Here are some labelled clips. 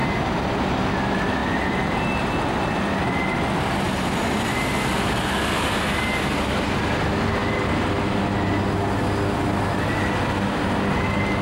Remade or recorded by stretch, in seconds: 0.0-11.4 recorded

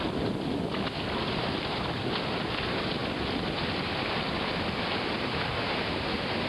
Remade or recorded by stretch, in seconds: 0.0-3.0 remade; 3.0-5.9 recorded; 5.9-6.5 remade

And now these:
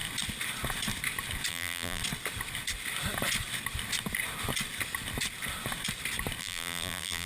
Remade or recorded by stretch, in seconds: 0.0-1.5 recorded; 1.5-2.0 remade; 2.0-6.4 recorded; 6.4-7.3 remade

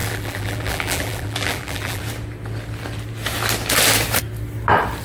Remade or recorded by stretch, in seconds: 0.0-2.0 remade; 2.0-5.0 recorded

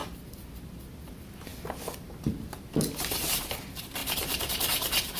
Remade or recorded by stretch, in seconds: 0.0-4.0 recorded; 4.0-5.2 remade

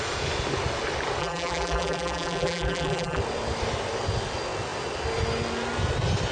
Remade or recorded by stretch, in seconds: 0.0-1.2 recorded; 1.2-3.2 remade; 3.2-6.3 recorded

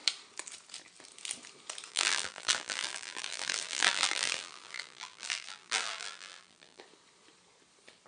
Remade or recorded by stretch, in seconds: 0.0-1.9 recorded; 1.9-6.8 remade; 6.8-8.1 recorded

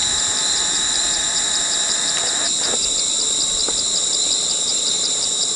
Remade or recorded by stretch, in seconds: 0.0-2.9 remade; 2.9-4.7 recorded; 4.7-5.6 remade